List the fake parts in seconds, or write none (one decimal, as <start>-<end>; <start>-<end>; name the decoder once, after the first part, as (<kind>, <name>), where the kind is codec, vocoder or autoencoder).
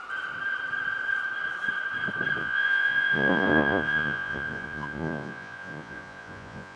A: 2.4-6.8 (vocoder, Vocos)